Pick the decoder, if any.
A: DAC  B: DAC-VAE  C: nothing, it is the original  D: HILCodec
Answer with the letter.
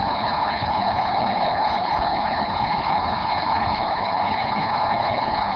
D